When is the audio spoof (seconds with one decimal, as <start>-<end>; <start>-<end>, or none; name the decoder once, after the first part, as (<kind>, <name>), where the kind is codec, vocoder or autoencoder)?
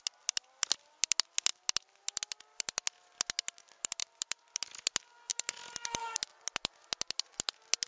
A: 4.0-4.6 (vocoder, BigVGAN v2)